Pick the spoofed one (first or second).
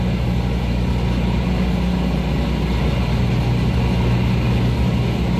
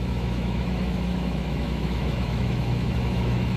second